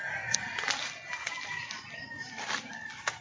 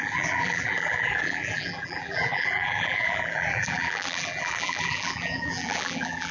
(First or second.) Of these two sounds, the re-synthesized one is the second